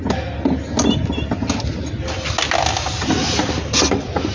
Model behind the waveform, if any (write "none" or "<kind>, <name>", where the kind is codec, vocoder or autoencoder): none